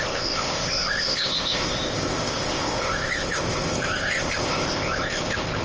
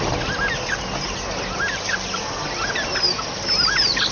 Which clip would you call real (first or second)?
second